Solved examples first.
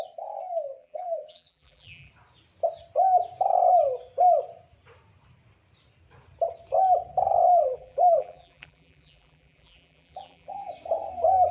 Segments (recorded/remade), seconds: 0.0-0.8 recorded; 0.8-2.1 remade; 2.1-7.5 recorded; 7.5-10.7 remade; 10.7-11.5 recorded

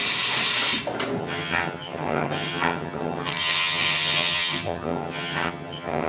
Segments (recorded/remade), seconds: 0.0-1.2 recorded; 1.2-6.1 remade

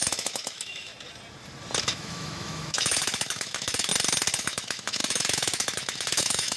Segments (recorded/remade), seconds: 0.0-0.9 remade; 0.9-1.8 recorded; 1.8-3.9 remade; 3.9-4.4 recorded; 4.4-6.6 remade